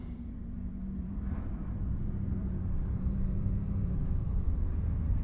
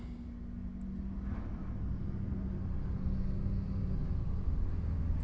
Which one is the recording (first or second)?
second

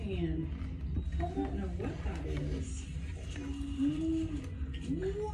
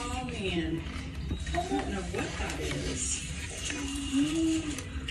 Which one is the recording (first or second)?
first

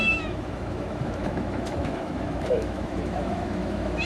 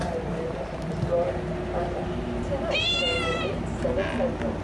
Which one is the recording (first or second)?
second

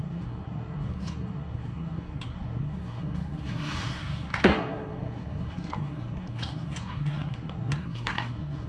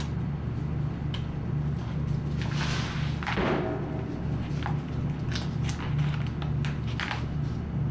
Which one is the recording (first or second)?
second